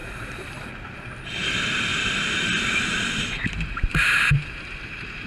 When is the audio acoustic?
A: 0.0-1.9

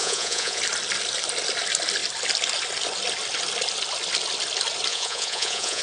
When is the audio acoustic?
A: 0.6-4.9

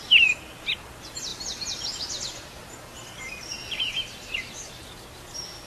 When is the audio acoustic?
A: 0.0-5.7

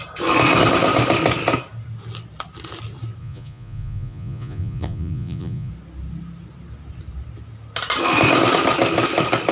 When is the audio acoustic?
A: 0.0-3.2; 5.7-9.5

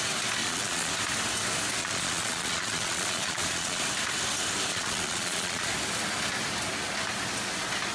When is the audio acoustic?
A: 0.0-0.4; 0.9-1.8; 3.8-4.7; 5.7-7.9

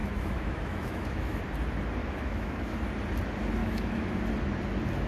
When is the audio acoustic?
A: 1.4-2.0; 2.8-3.6; 4.2-5.1

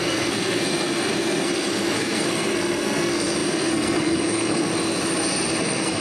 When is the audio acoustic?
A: 4.7-5.6